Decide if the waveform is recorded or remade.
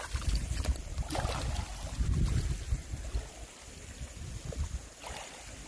recorded